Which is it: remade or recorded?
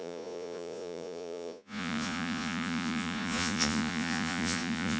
remade